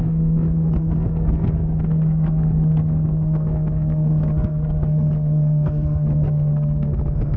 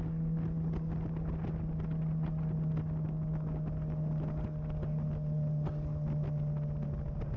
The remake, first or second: first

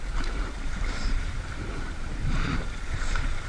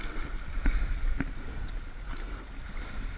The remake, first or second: first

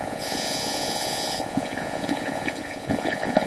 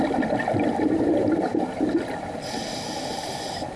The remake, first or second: first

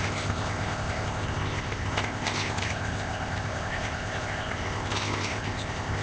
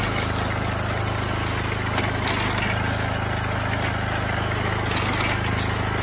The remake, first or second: first